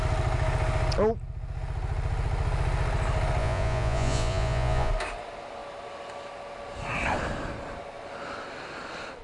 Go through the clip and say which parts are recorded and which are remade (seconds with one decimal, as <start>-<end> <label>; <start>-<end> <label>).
0.0-3.4 recorded; 3.4-4.9 remade; 4.9-9.2 recorded